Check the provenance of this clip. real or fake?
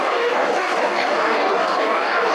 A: fake